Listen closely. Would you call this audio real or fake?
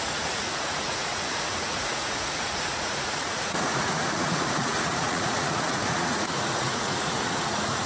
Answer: fake